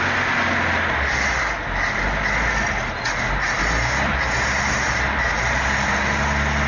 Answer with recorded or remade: recorded